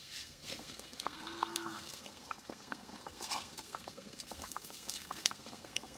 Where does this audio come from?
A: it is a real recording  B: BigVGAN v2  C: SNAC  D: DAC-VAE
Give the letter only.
C